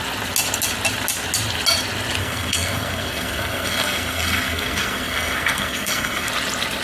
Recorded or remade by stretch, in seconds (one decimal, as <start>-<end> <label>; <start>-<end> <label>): 0.0-2.2 recorded; 2.2-6.3 remade; 6.3-6.8 recorded